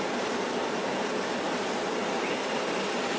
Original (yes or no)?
no